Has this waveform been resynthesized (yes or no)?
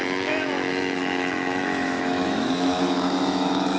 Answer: yes